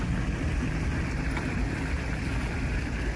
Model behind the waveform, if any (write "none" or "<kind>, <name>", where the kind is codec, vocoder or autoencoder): none